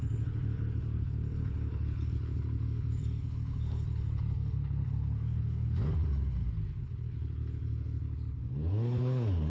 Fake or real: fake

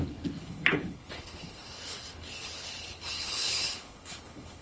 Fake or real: fake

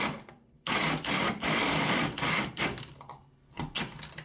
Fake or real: real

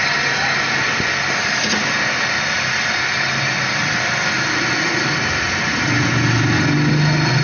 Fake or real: real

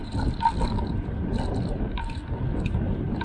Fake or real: real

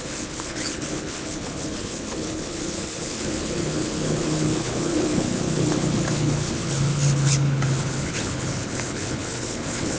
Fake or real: fake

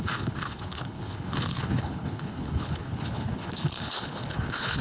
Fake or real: fake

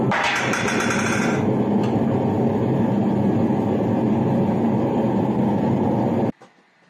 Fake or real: real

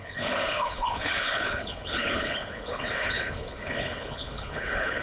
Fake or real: fake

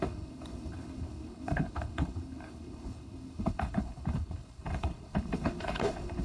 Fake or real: fake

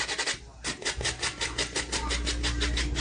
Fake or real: real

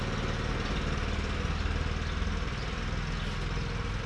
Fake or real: real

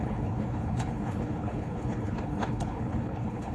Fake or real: fake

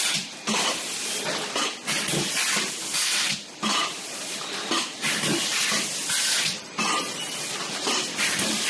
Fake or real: real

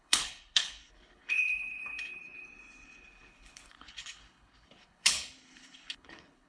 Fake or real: fake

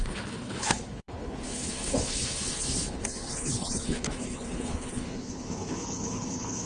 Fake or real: fake